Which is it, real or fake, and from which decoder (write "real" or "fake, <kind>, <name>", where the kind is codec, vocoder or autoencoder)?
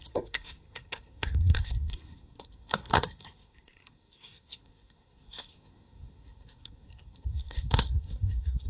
fake, codec, SNAC